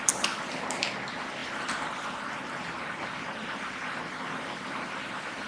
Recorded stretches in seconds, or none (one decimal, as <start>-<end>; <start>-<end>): 0.0-5.5